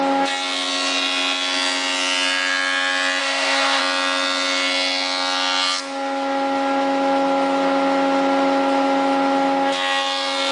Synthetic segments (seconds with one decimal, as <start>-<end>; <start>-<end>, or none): 3.2-3.8

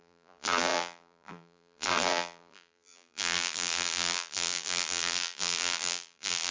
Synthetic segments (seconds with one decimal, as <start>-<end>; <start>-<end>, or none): 0.0-6.5

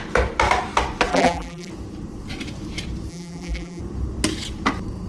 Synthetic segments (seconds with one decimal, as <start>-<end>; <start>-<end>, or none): 1.1-1.7; 3.1-3.8

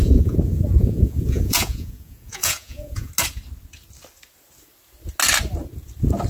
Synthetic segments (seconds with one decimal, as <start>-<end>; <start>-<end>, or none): 0.0-3.1

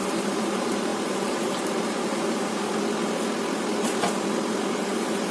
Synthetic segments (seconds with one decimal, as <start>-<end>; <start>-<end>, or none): 0.0-2.7; 4.6-5.3

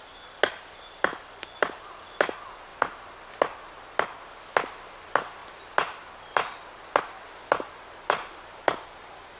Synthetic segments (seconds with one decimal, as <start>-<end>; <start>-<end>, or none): 1.1-1.9